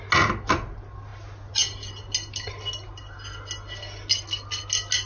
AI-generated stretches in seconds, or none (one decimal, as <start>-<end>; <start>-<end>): none